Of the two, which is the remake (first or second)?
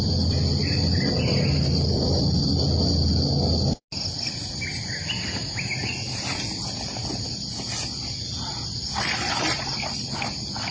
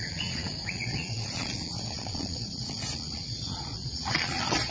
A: second